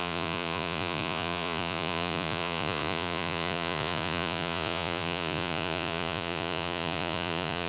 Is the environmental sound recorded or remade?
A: remade